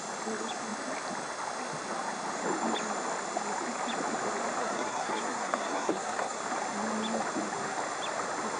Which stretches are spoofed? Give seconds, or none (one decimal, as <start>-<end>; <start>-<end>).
4.6-6.4